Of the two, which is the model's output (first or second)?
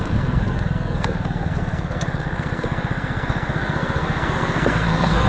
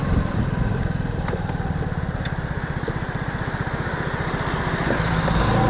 first